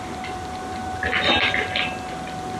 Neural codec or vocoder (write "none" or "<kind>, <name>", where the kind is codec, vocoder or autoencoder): none